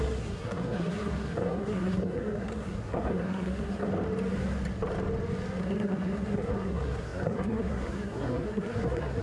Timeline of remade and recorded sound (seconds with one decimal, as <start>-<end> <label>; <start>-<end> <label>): 0.0-3.9 remade; 3.9-5.6 recorded; 5.6-9.2 remade